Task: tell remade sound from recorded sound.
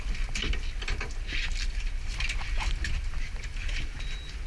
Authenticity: recorded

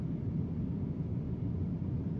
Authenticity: recorded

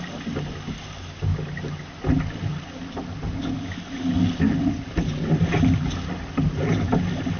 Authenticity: recorded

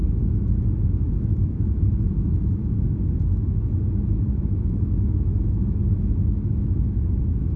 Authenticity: remade